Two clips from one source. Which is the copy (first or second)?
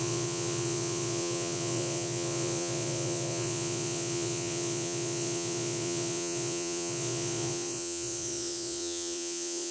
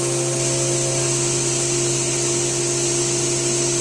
first